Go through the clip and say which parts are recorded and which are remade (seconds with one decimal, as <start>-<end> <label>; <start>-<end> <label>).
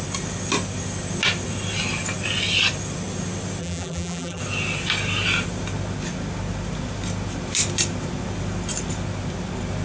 0.0-3.6 recorded; 3.6-4.4 remade; 4.4-9.8 recorded